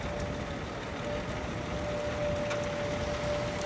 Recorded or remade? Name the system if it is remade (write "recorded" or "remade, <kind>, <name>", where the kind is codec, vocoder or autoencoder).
recorded